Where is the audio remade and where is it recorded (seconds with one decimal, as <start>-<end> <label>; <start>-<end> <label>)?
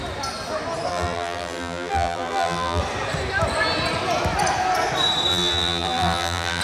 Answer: 0.0-0.9 recorded; 0.9-2.8 remade; 2.8-5.3 recorded; 5.3-6.6 remade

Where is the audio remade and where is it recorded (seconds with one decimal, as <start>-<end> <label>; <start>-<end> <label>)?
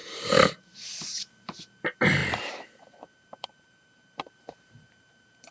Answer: 0.0-5.5 remade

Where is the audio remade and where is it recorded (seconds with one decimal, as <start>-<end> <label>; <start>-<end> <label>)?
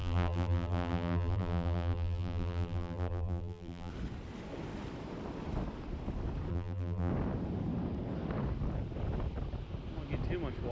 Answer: 0.0-3.9 remade; 3.9-6.5 recorded; 6.5-7.1 remade; 7.1-10.7 recorded